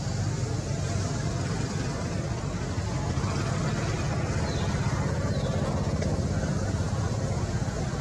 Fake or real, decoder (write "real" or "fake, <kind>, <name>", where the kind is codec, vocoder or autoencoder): real